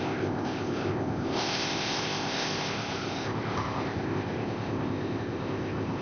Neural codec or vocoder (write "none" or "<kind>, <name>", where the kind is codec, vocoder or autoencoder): codec, ZipCodec